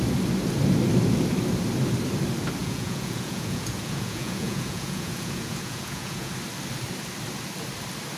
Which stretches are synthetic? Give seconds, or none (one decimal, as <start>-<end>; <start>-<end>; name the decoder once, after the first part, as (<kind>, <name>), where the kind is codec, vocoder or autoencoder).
2.6-6.3 (vocoder, Vocos)